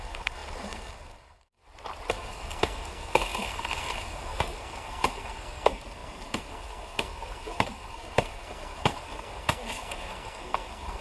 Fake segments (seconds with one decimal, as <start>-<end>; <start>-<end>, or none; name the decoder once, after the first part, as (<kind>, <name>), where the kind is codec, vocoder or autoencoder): 0.0-1.6 (codec, SNAC); 2.1-11.0